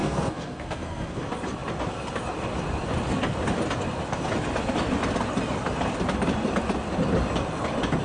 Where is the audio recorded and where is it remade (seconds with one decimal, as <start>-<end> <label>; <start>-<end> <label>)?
0.0-1.2 remade; 1.2-8.0 recorded